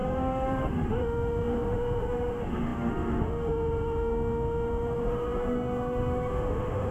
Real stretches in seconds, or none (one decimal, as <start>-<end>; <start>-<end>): none